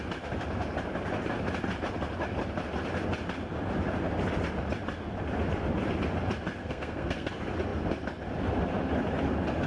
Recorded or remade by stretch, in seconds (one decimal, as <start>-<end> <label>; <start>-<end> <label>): 0.0-6.6 recorded; 6.6-7.3 remade; 7.3-9.7 recorded